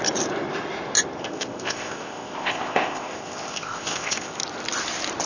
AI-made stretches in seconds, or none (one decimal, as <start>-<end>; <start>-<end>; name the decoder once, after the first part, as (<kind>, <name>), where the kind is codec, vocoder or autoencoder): 1.2-4.4 (codec, ZipCodec)